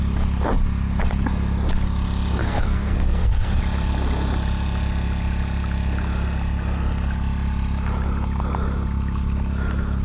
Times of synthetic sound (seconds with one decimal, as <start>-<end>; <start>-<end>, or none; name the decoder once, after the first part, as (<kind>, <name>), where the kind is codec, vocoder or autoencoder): 2.4-3.6 (codec, SNAC)